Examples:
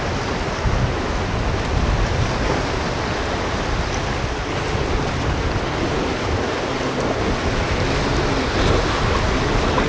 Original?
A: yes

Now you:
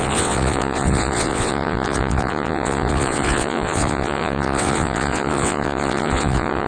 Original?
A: no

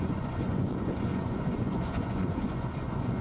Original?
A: no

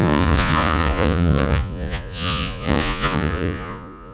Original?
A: no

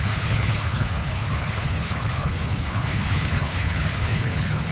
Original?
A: no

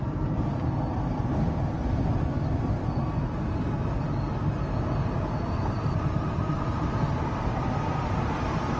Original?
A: yes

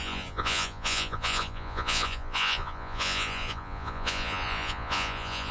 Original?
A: no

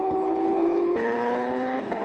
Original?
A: no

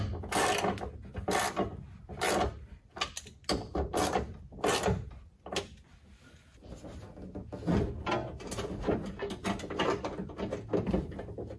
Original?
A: yes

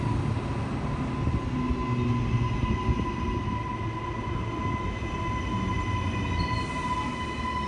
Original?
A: yes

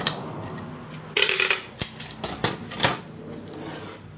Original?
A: yes